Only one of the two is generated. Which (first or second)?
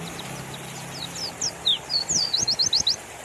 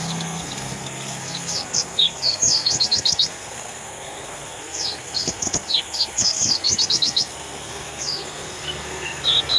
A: second